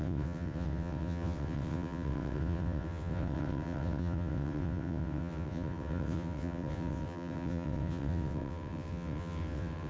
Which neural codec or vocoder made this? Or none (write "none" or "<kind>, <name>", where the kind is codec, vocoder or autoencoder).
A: vocoder, WaveNeXt